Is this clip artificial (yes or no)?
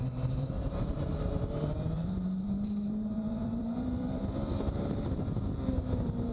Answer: yes